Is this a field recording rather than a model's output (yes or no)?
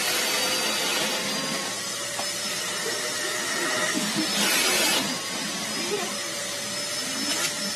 yes